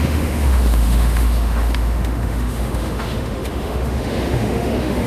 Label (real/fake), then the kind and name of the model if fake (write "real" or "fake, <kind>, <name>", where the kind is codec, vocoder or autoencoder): fake, autoencoder, DAC-VAE